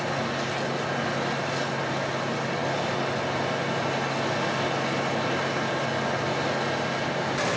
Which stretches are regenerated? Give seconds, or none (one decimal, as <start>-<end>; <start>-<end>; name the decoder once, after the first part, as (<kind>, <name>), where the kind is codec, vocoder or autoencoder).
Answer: none

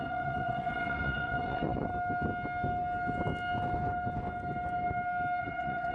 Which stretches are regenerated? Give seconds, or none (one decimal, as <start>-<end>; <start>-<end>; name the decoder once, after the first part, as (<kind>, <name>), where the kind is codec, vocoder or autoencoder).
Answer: 0.0-1.9 (vocoder, WaveNeXt); 5.4-5.9

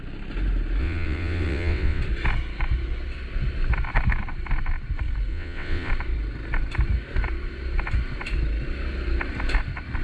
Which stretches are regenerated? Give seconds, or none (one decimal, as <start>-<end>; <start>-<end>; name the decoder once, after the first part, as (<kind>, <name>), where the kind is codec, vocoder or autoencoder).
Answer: 0.8-2.0 (vocoder, WaveNeXt); 5.3-5.9

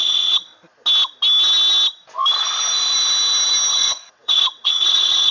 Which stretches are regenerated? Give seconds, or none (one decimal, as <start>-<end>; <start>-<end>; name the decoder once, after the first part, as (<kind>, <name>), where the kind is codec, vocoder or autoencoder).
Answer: 0.0-0.5 (vocoder, WaveNeXt); 3.7-5.3